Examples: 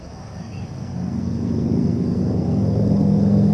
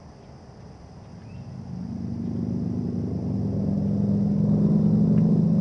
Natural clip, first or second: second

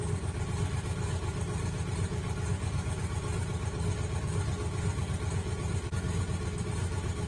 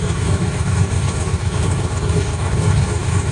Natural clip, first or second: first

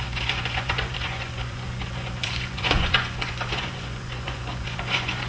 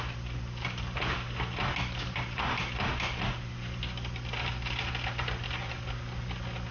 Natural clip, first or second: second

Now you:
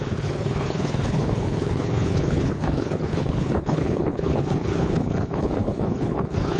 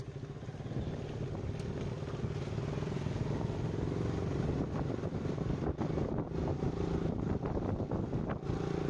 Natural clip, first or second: second